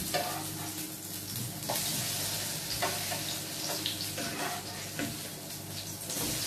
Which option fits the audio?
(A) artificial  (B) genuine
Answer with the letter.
B